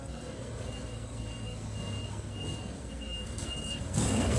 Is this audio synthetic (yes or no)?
yes